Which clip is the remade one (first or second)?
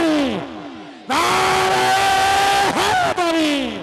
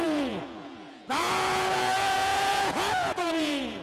second